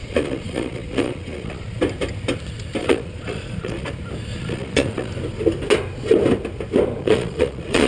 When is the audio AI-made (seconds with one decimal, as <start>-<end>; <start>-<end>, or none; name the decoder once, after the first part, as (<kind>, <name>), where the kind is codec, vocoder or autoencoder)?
0.0-1.8 (vocoder, Vocos); 2.8-3.9; 4.3-5.1; 7.0-7.9